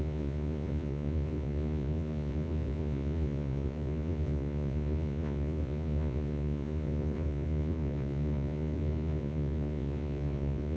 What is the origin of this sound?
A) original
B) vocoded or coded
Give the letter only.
B